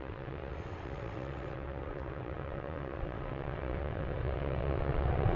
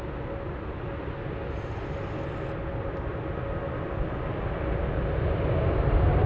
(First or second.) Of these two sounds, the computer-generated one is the first